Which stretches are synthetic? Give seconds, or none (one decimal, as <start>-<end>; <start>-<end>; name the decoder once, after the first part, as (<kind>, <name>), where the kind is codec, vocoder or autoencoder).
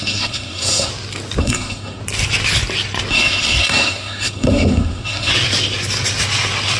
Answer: 0.0-0.9 (codec, SNAC); 1.4-2.0; 3.1-5.3